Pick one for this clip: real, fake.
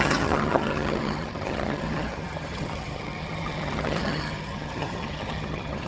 fake